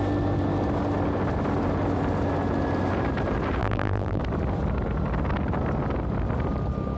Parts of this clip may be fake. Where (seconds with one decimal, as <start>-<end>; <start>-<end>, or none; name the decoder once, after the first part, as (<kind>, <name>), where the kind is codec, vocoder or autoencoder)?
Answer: 3.6-4.2 (vocoder, BigVGAN v2)